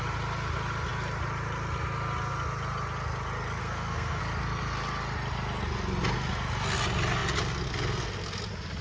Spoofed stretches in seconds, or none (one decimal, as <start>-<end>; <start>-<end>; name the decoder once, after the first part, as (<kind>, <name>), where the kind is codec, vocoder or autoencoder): 3.6-4.2 (codec, SNAC)